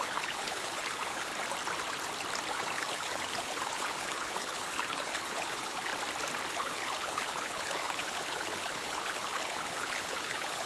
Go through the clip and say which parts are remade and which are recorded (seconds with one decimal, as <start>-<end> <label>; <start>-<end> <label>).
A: 0.0-1.3 remade; 1.3-2.5 recorded; 2.5-5.9 remade; 5.9-6.5 recorded; 6.5-10.7 remade